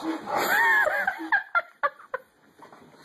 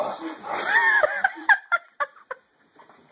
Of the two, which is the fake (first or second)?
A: second